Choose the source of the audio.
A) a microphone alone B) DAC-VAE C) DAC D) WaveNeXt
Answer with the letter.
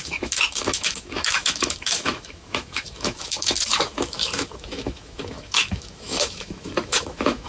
B